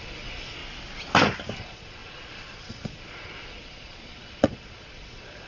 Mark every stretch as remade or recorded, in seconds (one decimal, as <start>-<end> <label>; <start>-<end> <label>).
0.0-0.6 remade; 0.6-1.6 recorded; 1.6-5.5 remade